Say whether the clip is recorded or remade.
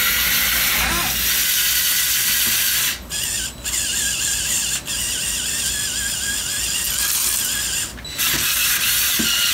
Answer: recorded